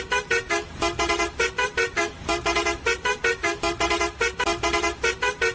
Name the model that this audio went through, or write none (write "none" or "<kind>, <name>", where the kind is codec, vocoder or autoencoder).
vocoder, BigVGAN v2